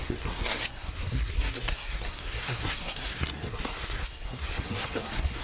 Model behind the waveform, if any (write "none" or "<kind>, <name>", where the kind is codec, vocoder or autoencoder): codec, SNAC